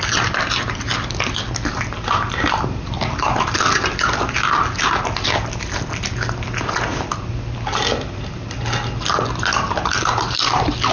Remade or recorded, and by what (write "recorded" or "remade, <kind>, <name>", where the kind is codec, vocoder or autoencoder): recorded